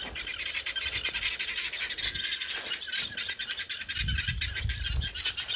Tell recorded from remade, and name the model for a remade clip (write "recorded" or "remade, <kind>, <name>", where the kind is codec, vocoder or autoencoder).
recorded